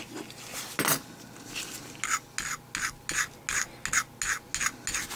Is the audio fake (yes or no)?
no